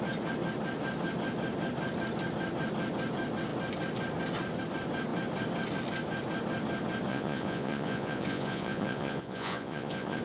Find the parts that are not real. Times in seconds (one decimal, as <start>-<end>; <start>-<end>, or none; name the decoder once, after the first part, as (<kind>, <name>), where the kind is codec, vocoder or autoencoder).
7.1-10.2 (vocoder, Vocos)